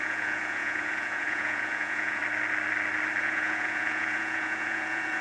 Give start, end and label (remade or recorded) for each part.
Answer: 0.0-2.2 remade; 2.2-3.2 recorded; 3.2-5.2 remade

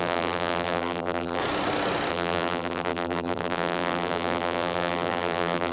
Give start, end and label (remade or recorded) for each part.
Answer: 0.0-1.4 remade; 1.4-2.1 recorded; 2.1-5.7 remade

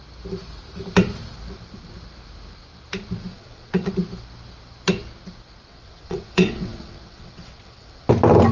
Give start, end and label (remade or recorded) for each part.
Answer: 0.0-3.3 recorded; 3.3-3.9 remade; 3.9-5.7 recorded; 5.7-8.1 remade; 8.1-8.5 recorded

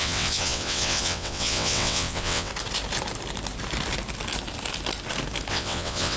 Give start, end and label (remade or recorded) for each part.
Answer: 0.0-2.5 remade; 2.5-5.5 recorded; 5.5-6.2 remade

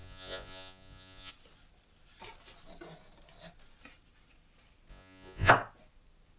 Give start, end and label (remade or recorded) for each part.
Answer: 0.0-1.3 remade; 1.3-4.9 recorded; 4.9-5.5 remade; 5.5-6.4 recorded